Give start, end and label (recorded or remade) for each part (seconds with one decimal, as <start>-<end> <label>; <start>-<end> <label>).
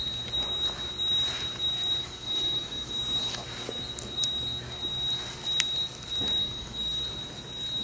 0.0-2.0 recorded; 2.0-3.0 remade; 3.0-6.4 recorded; 6.4-7.0 remade; 7.0-7.8 recorded